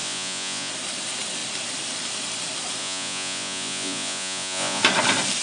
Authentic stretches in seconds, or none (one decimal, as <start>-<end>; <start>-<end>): 0.7-2.8; 4.8-5.4